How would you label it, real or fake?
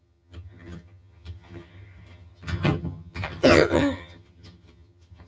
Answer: fake